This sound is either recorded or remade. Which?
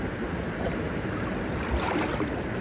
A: recorded